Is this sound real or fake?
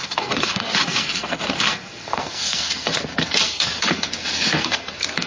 fake